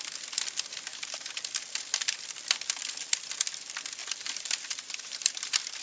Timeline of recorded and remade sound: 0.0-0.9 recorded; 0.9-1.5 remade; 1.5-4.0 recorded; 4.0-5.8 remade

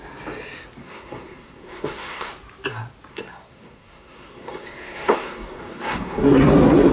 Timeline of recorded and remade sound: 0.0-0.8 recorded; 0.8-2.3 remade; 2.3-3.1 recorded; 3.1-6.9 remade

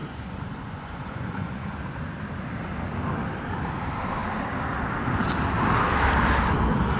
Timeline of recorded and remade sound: 0.0-1.8 remade; 1.8-7.0 recorded

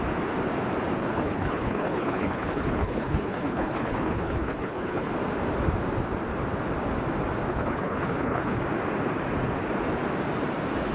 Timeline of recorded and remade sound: 0.0-1.0 recorded; 1.0-5.1 remade; 5.1-7.5 recorded; 7.5-8.6 remade; 8.6-10.9 recorded

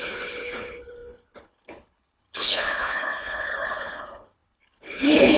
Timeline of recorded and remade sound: 0.0-5.4 remade